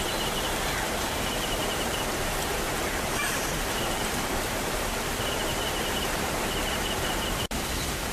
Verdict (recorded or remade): remade